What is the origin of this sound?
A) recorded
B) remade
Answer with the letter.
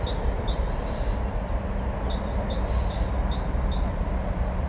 A